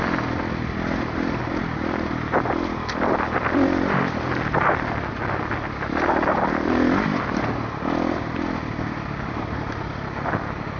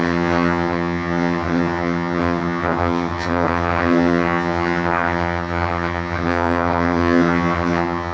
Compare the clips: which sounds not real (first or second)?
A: second